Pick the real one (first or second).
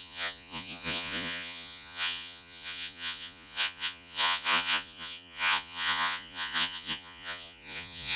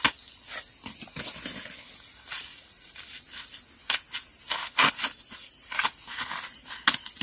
second